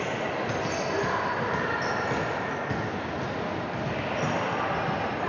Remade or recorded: recorded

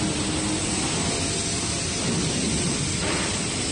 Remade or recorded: recorded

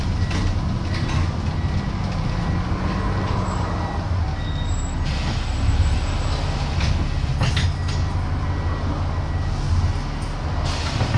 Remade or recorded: recorded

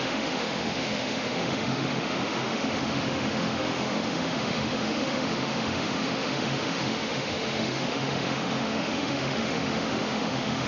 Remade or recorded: remade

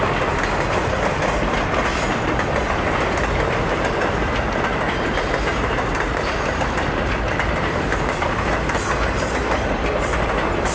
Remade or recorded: recorded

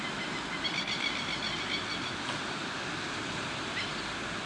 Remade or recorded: recorded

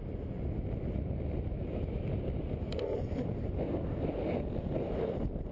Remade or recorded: recorded